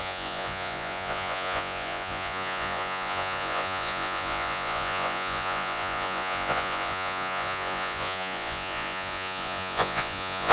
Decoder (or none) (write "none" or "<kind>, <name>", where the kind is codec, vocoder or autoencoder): vocoder, Vocos